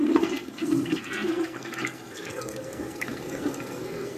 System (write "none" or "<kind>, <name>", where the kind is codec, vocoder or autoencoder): codec, SNAC